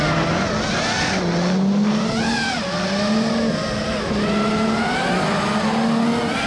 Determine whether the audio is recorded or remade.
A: recorded